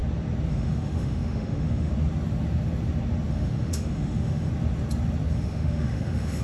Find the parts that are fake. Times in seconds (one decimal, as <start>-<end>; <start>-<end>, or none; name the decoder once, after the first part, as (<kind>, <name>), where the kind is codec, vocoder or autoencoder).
0.5-1.9 (autoencoder, DAC-VAE); 3.3-4.5; 5.3-6.4